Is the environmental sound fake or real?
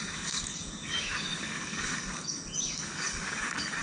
fake